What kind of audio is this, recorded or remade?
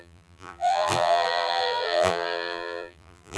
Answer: remade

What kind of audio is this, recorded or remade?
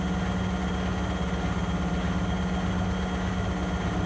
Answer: recorded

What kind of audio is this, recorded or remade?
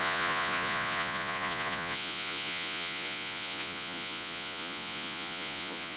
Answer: remade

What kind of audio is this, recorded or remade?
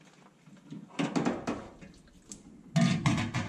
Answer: recorded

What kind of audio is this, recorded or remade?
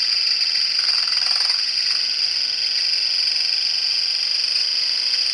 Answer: recorded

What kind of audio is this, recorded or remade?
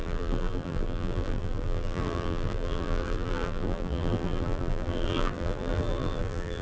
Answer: remade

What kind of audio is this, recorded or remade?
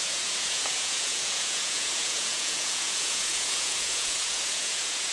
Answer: remade